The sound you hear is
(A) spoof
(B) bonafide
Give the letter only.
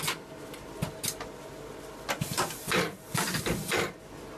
B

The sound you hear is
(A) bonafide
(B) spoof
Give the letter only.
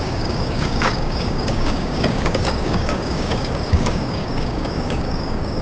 B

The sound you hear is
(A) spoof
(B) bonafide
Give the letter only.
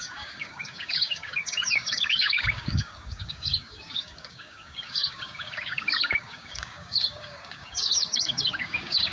A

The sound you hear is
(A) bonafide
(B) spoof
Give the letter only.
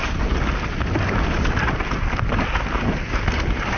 A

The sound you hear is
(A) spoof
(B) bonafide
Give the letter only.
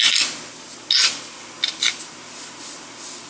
B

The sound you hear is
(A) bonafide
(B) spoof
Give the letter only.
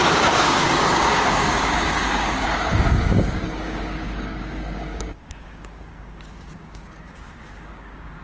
B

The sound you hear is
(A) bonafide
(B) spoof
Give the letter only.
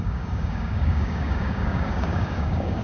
B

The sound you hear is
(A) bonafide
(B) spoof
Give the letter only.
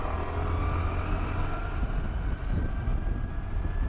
A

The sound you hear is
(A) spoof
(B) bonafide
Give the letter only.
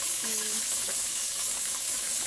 A